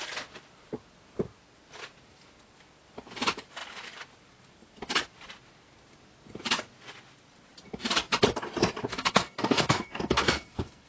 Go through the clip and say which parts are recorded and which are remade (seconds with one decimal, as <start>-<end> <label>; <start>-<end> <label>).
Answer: 0.0-8.9 recorded; 8.9-10.9 remade